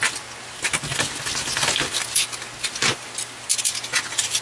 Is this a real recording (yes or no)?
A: yes